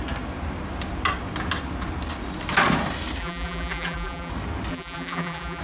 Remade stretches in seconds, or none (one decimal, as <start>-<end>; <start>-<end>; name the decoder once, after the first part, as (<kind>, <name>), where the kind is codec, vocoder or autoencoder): 3.2-4.3 (vocoder, BigVGAN v2); 4.7-5.6